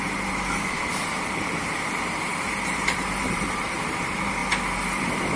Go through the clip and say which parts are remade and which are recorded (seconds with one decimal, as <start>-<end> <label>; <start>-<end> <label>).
0.0-4.4 remade; 4.4-5.4 recorded